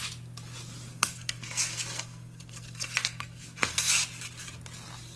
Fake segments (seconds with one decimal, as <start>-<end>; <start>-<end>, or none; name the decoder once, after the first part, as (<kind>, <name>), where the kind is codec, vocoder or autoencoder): 0.9-3.9 (codec, SNAC)

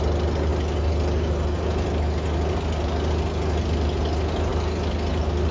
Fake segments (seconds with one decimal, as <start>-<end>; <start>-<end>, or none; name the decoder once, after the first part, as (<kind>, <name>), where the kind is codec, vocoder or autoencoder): none

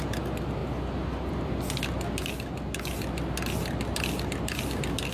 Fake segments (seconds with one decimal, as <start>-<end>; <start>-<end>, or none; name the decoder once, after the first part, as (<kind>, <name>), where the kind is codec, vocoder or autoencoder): none

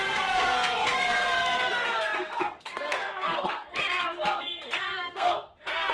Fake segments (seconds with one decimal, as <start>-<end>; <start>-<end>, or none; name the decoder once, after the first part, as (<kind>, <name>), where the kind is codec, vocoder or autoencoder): 0.0-5.9 (codec, SNAC)